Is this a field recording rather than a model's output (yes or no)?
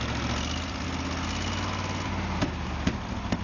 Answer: yes